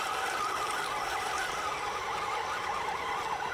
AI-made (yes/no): no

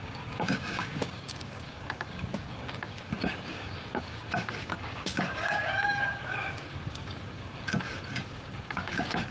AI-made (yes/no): yes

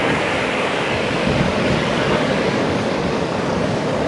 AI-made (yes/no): yes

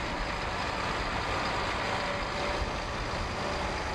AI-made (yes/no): no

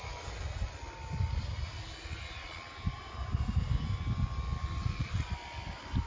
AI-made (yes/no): no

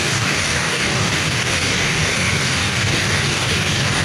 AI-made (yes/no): yes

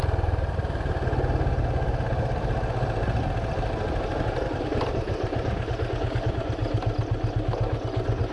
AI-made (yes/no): no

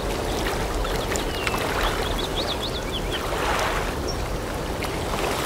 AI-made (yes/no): no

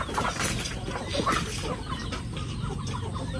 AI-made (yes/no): no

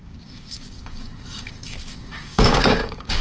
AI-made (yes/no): yes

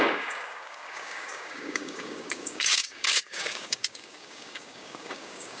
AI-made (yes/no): yes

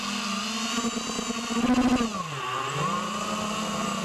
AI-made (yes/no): no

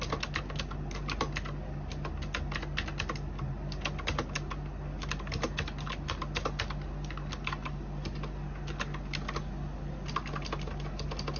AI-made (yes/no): no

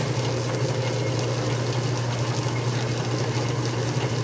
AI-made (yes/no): no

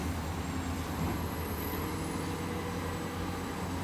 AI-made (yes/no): no